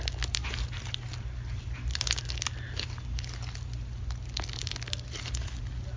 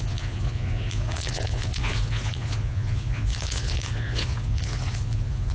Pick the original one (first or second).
first